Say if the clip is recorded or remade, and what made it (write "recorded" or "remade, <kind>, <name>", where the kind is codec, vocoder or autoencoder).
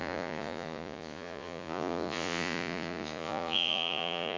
remade, vocoder, Vocos